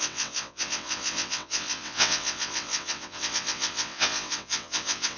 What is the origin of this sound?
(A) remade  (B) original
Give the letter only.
A